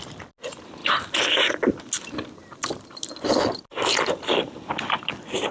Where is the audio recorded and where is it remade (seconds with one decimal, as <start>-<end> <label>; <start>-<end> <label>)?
0.0-5.5 recorded

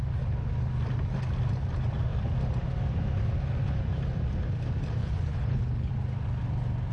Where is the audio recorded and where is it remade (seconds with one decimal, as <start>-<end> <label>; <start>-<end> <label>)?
0.0-5.0 recorded; 5.0-5.9 remade; 5.9-6.9 recorded

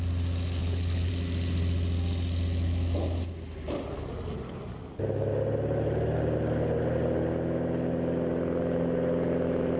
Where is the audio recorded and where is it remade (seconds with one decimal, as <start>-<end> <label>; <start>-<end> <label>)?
0.0-0.6 recorded; 0.6-1.1 remade; 1.1-9.8 recorded

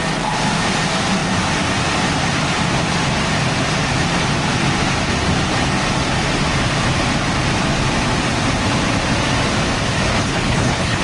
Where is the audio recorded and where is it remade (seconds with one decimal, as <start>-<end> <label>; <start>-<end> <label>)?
0.0-10.1 recorded; 10.1-11.0 remade

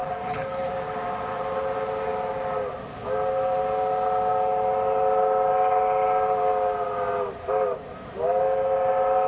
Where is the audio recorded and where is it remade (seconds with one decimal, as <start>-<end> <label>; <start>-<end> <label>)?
0.0-0.7 remade; 0.7-9.3 recorded

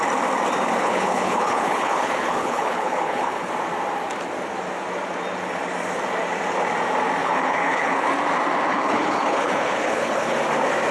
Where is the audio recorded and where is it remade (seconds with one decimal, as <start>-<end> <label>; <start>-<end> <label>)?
0.0-0.8 recorded; 0.8-3.5 remade; 3.5-7.2 recorded; 7.2-8.1 remade; 8.1-8.7 recorded; 8.7-10.4 remade; 10.4-10.9 recorded

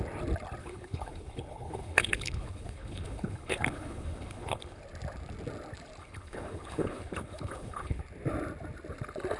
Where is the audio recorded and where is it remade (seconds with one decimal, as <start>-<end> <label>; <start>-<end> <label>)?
0.0-0.6 recorded; 0.6-4.8 remade; 4.8-6.0 recorded; 6.0-8.0 remade; 8.0-9.4 recorded

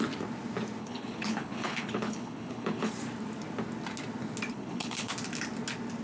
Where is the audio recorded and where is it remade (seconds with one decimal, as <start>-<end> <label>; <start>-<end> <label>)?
0.0-0.8 recorded; 0.8-2.9 remade; 2.9-4.5 recorded; 4.5-5.1 remade; 5.1-6.0 recorded